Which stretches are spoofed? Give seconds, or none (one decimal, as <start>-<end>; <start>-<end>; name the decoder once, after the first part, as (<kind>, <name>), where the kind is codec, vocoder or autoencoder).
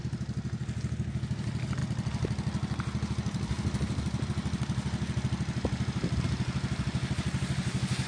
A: none